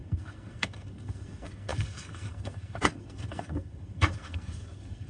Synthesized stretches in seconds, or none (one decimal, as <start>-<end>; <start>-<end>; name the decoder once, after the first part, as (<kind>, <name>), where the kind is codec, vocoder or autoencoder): 0.0-5.1 (codec, SNAC)

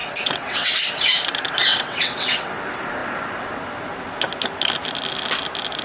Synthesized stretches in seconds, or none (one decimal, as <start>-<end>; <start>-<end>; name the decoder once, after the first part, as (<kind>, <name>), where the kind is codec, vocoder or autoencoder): 0.0-0.7 (vocoder, WaveNeXt); 1.7-2.5

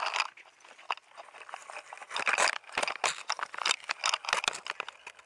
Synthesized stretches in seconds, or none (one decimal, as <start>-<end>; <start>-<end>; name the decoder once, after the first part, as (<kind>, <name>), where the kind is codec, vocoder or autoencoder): none

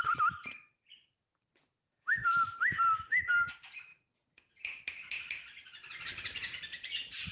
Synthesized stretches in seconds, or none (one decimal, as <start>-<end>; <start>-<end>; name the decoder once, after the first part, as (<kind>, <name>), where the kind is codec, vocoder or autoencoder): 0.0-3.9 (vocoder, BigVGAN v2); 5.3-7.3

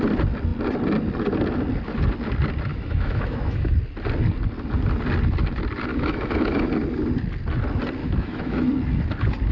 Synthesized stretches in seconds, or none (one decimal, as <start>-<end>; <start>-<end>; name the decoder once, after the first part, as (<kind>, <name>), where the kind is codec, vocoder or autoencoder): 2.7-3.7 (autoencoder, DAC-VAE); 5.9-6.7; 8.0-8.7

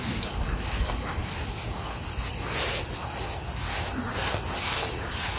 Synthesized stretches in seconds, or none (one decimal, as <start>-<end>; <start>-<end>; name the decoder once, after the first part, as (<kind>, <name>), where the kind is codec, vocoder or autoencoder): none

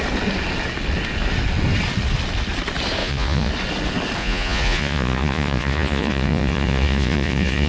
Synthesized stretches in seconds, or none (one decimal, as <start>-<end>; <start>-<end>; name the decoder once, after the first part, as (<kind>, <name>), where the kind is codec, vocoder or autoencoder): 3.0-3.5 (vocoder, Vocos); 4.2-7.7

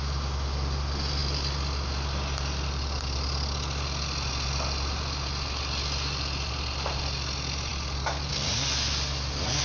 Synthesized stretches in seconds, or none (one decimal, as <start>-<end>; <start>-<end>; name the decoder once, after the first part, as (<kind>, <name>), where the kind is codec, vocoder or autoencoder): none